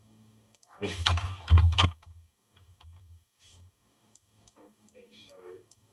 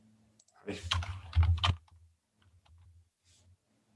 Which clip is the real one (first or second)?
second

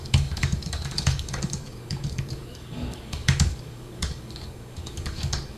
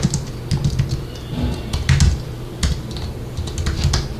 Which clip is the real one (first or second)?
second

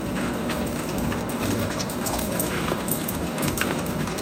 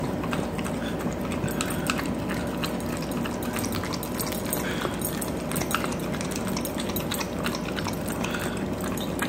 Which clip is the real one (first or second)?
second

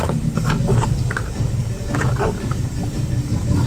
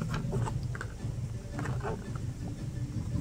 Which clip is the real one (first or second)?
second